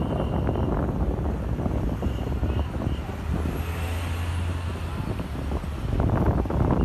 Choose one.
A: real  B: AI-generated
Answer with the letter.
A